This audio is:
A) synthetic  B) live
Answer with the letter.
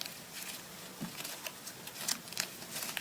B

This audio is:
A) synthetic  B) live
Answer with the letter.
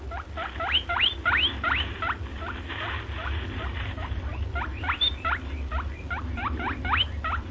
B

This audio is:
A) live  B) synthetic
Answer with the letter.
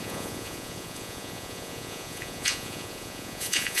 B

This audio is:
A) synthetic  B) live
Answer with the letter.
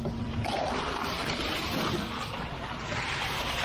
A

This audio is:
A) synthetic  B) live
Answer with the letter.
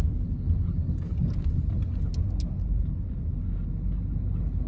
B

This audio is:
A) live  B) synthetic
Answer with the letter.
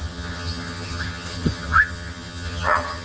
B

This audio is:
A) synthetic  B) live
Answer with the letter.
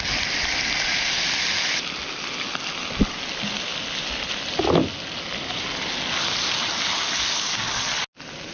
B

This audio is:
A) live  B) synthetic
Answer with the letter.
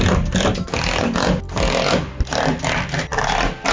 A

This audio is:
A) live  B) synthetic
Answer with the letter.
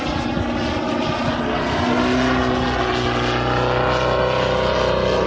A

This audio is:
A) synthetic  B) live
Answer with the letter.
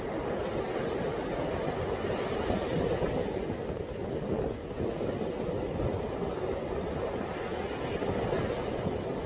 B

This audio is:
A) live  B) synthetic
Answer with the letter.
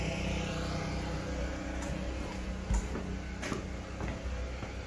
A